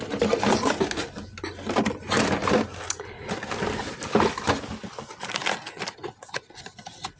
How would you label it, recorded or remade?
recorded